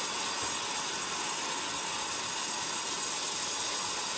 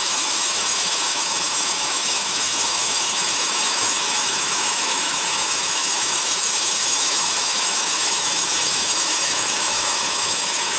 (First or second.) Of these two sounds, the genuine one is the first